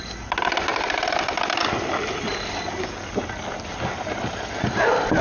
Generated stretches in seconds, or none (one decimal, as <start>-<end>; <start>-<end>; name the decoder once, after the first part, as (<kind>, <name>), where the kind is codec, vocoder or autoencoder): none